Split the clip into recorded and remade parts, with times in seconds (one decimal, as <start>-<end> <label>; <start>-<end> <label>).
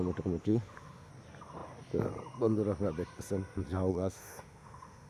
0.0-0.4 recorded; 0.4-1.1 remade; 1.1-3.9 recorded; 3.9-5.1 remade